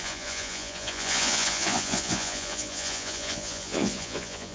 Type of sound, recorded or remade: remade